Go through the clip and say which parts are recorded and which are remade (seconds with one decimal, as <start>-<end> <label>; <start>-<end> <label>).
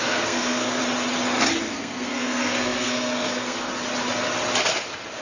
0.0-0.8 remade; 0.8-1.7 recorded; 1.7-3.7 remade; 3.7-5.2 recorded